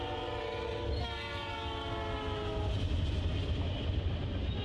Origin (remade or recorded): recorded